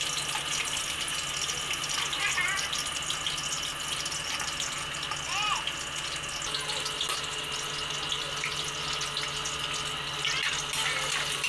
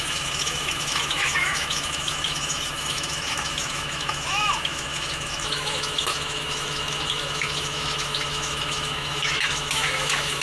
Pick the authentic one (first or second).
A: first